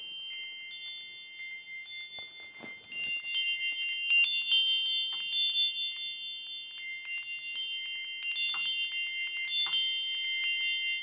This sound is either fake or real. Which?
real